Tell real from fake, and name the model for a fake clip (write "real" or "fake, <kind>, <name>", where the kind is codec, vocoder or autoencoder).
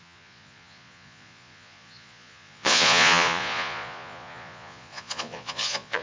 fake, vocoder, Vocos